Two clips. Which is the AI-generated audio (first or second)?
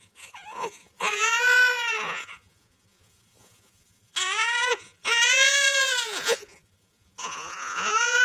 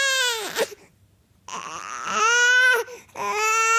first